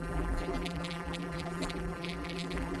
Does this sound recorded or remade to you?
remade